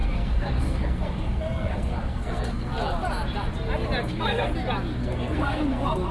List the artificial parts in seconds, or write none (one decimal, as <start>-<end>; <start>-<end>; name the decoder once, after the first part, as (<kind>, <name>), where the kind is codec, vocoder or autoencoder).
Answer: 0.0-2.7 (codec, SNAC); 4.0-4.5; 5.0-6.1